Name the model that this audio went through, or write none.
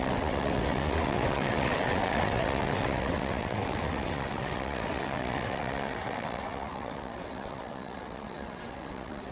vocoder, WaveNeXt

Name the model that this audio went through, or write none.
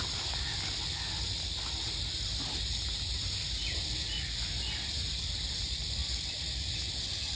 none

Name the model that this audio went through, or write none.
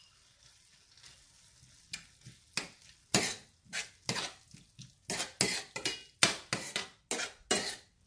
none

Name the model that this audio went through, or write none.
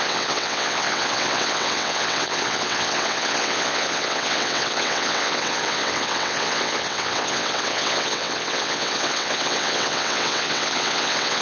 vocoder, WaveNeXt